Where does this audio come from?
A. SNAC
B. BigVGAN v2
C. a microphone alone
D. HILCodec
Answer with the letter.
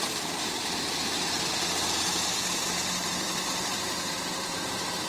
B